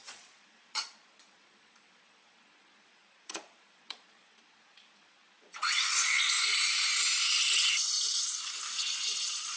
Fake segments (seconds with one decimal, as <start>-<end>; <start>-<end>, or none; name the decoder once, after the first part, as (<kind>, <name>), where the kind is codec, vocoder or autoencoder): 0.0-6.5 (vocoder, Vocos); 9.2-9.6